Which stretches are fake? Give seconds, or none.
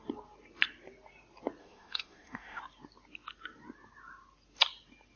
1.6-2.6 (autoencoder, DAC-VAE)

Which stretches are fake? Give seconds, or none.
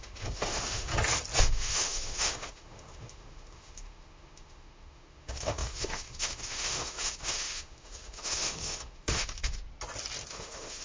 0.0-0.9 (autoencoder, DAC-VAE); 1.4-9.6; 10.3-10.8